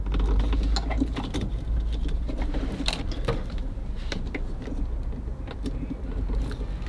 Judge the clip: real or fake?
real